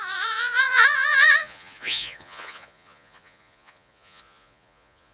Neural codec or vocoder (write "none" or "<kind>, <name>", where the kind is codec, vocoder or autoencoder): vocoder, Vocos